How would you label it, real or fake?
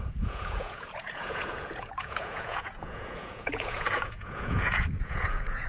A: fake